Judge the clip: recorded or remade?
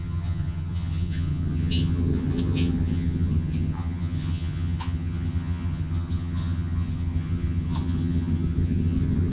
remade